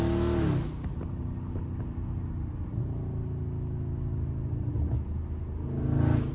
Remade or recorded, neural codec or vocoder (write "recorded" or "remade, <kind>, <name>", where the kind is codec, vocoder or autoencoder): recorded